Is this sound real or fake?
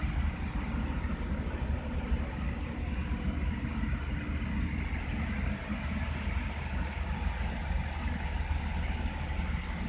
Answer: real